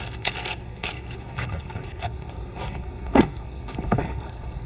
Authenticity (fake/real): fake